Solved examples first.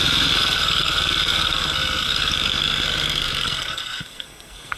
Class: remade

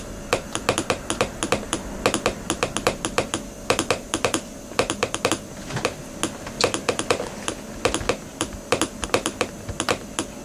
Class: recorded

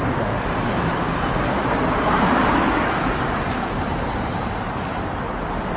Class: remade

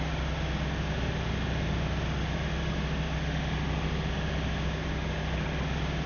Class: recorded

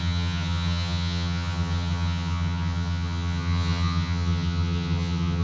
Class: remade